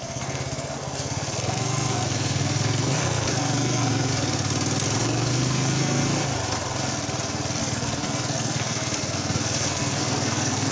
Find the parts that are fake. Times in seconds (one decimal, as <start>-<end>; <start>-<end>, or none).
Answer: 0.0-4.1; 5.0-6.3; 7.6-10.7